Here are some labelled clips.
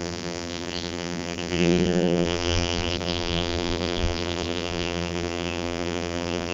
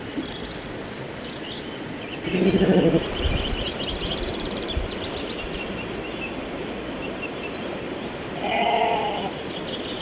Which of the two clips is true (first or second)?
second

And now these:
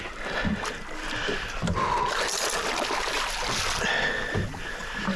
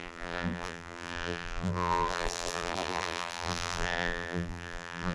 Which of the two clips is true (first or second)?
first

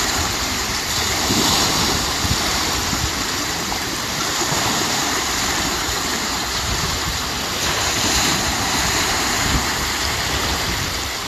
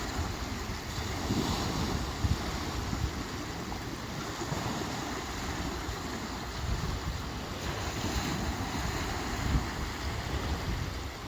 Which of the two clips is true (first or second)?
second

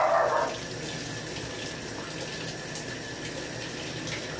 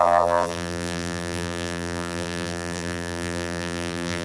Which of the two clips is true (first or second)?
first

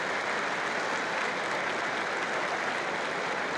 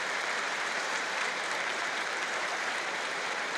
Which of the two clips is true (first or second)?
first